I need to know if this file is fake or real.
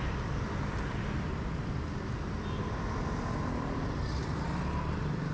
real